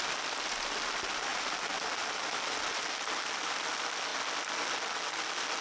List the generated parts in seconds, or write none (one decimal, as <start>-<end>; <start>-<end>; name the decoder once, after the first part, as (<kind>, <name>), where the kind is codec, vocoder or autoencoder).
none